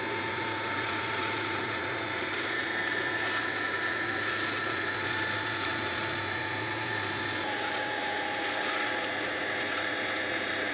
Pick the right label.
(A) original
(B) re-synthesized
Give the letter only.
B